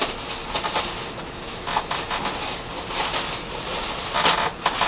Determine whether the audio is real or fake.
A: real